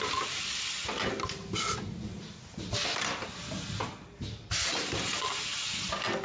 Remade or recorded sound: recorded